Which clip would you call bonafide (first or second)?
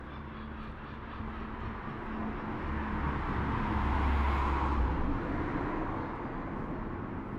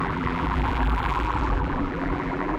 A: first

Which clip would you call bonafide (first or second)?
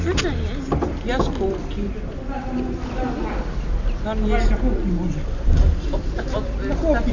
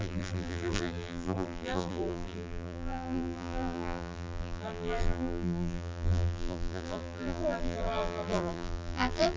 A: first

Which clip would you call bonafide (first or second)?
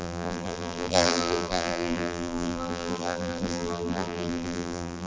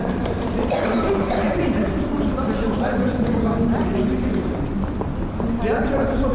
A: second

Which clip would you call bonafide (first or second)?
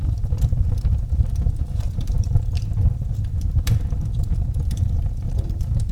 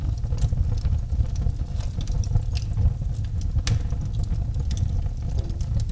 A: second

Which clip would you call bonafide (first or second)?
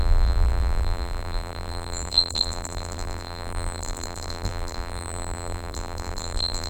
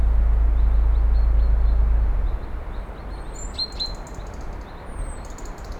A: second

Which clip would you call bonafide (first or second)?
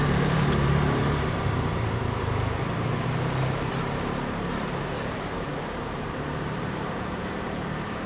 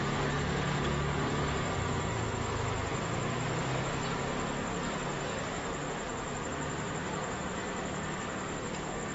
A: second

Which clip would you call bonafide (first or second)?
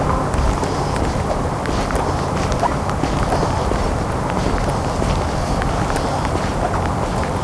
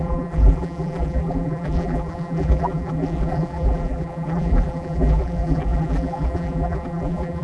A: first